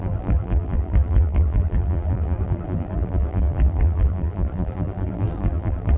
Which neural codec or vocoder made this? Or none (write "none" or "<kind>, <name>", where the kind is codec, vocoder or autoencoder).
vocoder, BigVGAN v2